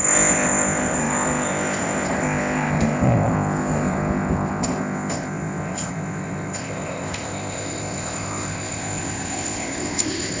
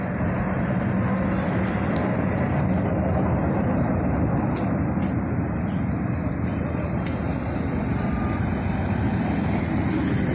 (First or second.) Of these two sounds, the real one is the second